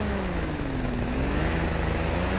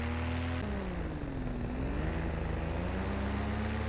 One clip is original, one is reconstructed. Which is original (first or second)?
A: second